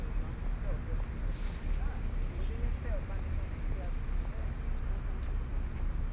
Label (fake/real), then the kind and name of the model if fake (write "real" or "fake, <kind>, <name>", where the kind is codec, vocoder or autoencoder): real